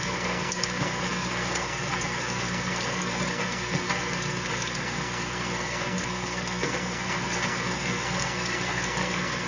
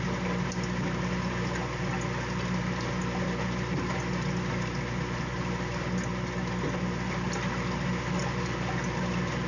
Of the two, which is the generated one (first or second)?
first